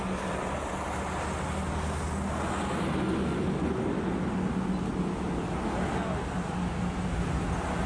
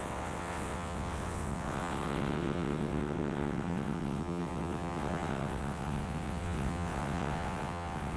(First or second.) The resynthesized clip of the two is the second